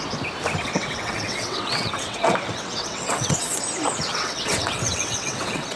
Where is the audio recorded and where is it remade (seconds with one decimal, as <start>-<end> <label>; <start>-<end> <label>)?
0.0-0.6 recorded; 0.6-3.6 remade; 3.6-4.1 recorded; 4.1-5.8 remade